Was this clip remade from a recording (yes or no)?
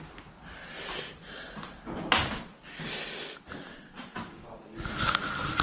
no